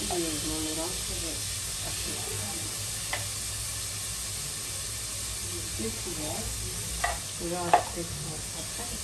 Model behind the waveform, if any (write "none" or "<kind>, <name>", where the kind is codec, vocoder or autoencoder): none